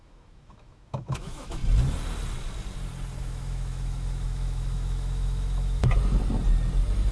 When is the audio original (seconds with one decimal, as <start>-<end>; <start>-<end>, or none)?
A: 1.6-3.2; 5.8-7.1